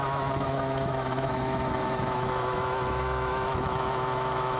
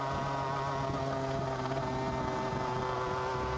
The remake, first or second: first